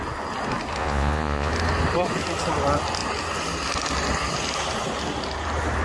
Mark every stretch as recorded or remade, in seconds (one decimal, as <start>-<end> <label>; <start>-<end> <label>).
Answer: 0.0-0.8 recorded; 0.8-1.5 remade; 1.5-5.8 recorded